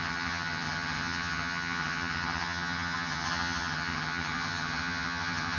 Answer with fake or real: fake